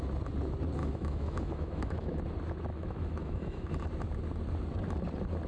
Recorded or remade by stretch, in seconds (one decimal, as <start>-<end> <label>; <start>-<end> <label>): 0.0-0.8 recorded; 0.8-2.2 remade; 2.2-2.7 recorded; 2.7-3.7 remade; 3.7-5.5 recorded